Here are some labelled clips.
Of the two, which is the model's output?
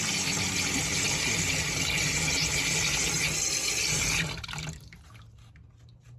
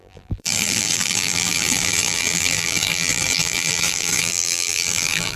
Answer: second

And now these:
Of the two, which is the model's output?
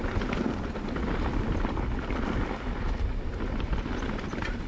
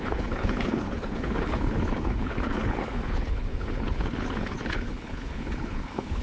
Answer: second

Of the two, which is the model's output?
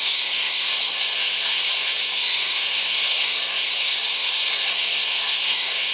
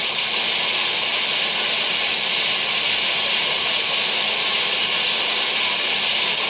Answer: first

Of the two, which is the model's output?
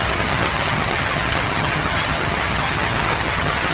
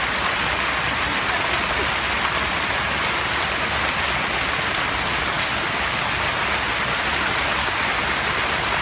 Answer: first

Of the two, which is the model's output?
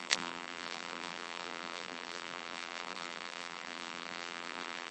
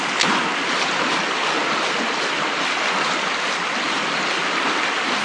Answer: first